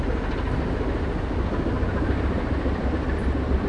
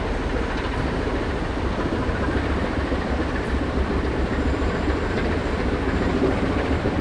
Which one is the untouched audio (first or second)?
first